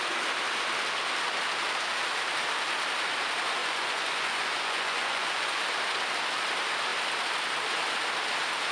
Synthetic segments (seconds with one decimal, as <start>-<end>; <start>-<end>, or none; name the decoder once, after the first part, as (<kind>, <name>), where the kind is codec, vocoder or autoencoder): 3.6-5.6 (vocoder, Vocos)